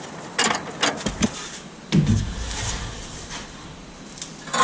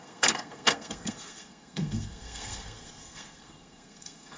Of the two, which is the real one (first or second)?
first